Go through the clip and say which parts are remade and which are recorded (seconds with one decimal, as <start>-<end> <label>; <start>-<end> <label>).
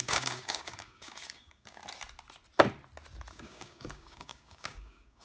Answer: 0.0-1.8 remade; 1.8-3.3 recorded; 3.3-5.2 remade